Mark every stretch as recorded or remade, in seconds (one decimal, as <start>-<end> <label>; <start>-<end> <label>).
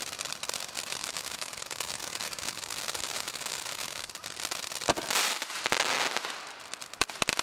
0.0-1.0 recorded; 1.0-4.1 remade; 4.1-7.4 recorded